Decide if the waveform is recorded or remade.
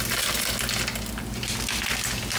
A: recorded